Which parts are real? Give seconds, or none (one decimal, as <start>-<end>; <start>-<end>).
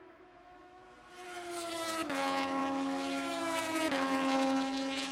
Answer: 0.8-1.7